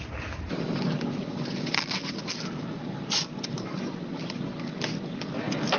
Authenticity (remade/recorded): recorded